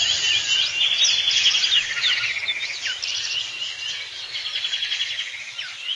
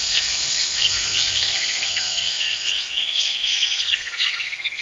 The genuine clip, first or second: first